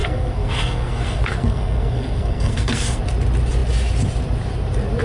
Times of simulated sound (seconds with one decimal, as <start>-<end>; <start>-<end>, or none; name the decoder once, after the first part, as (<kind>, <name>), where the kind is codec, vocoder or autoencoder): 0.0-3.0 (codec, SNAC)